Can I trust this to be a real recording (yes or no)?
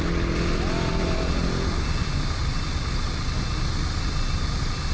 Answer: yes